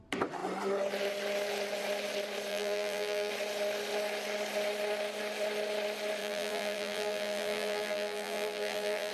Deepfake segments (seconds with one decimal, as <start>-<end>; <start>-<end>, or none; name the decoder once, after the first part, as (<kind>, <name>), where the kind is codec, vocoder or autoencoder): 2.5-3.3 (vocoder, BigVGAN v2); 6.2-9.1